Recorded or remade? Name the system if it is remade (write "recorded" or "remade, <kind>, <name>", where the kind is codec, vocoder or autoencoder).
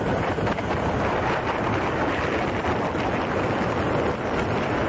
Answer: recorded